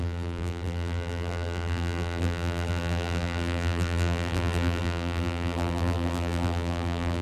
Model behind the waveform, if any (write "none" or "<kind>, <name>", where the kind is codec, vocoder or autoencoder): vocoder, BigVGAN v2